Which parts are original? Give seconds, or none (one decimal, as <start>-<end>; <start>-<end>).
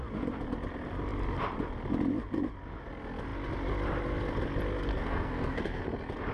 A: 0.0-4.9; 5.8-6.3